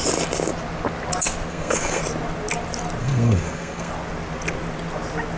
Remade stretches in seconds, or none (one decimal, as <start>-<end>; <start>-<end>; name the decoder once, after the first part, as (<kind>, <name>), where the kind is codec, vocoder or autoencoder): 1.5-2.0 (codec, SNAC); 3.0-3.9